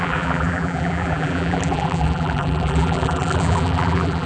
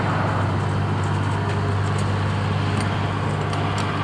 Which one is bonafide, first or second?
second